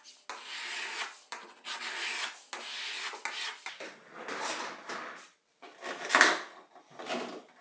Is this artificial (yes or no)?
no